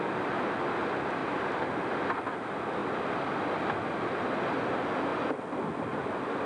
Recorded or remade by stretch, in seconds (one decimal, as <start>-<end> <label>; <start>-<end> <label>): 0.0-6.5 recorded